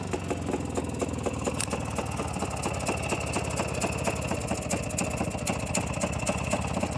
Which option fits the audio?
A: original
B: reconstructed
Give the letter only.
A